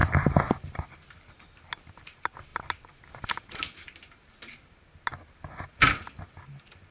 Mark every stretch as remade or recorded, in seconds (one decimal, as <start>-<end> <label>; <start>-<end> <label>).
0.0-6.9 recorded